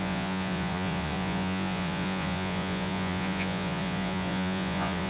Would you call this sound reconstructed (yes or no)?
yes